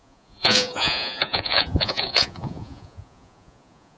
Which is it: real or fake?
fake